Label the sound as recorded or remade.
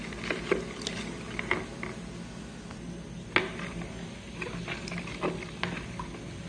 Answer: recorded